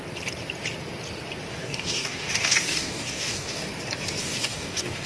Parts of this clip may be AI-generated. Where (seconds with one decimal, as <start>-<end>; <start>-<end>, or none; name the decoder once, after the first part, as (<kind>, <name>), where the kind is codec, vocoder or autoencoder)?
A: 1.5-3.7 (codec, DAC); 4.2-5.1